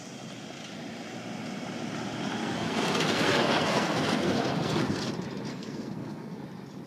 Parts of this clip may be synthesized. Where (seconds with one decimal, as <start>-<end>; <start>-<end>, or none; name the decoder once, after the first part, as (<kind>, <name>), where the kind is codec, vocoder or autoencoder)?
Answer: 2.4-5.1 (codec, SNAC); 5.5-6.4